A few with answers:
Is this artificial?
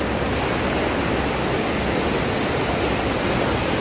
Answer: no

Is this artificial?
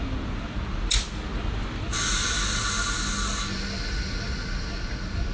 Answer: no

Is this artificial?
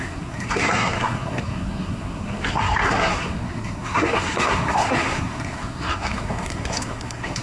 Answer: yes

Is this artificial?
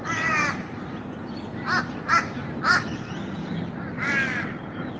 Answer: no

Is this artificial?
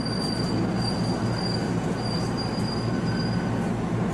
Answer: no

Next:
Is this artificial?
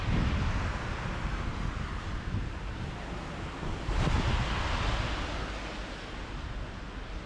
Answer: no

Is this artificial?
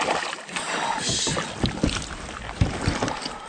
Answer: no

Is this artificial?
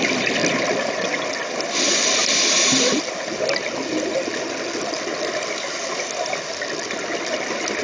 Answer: no